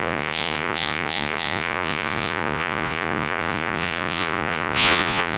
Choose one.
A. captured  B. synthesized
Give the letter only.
B